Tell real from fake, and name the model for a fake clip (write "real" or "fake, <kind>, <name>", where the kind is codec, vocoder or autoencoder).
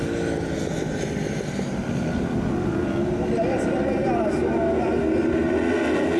real